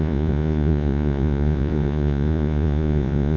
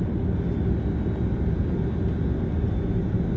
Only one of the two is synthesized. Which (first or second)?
first